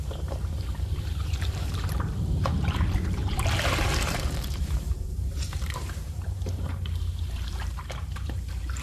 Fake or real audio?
fake